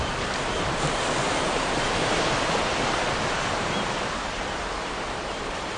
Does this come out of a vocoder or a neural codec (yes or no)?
no